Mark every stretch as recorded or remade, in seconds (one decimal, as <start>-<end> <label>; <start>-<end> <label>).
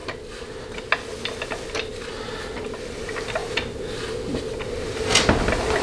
0.0-5.8 recorded